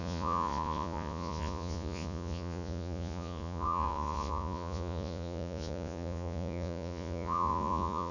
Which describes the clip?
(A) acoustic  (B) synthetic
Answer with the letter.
B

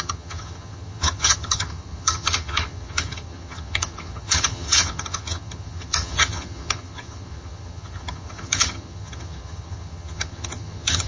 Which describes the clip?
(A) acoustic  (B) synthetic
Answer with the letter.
B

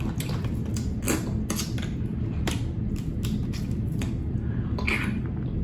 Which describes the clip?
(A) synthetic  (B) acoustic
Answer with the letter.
B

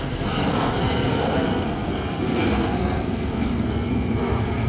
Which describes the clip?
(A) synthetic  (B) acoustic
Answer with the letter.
A